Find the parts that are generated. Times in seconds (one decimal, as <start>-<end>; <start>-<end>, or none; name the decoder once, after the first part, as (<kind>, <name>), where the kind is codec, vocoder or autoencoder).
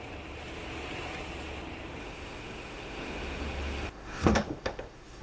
2.0-5.2 (autoencoder, DAC-VAE)